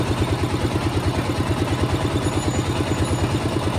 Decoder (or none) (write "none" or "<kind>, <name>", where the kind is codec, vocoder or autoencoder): none